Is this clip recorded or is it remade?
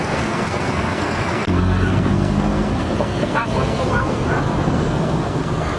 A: remade